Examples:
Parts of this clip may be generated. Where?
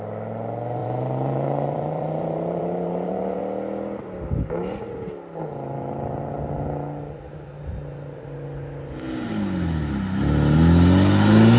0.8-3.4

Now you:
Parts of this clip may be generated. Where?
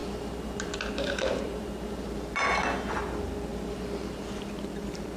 0.0-3.1; 3.5-4.5